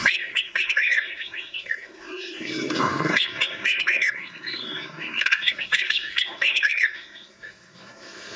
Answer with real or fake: fake